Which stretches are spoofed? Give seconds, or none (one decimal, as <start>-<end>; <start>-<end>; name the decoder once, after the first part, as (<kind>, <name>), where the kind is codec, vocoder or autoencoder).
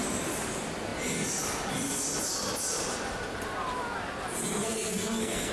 4.6-5.5 (codec, SNAC)